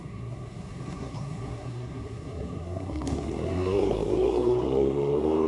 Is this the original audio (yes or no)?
no